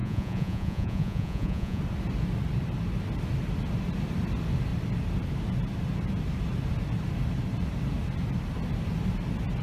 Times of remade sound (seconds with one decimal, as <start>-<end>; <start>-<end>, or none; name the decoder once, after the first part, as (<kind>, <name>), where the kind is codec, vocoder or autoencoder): 0.0-1.8 (vocoder, Vocos)